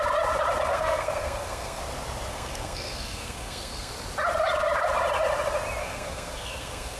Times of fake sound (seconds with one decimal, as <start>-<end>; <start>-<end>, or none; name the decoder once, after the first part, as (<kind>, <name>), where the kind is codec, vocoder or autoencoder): 0.7-1.8 (codec, SNAC); 2.3-3.9; 5.8-7.0